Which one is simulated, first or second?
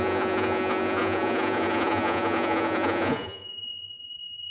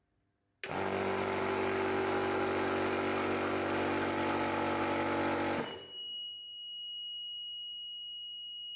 first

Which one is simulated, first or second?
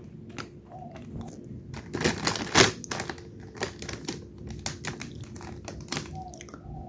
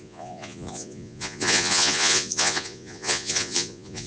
second